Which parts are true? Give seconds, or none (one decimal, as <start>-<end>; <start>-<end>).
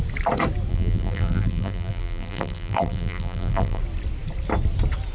0.0-0.7; 3.8-5.1